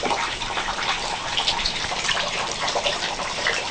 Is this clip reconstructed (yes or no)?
yes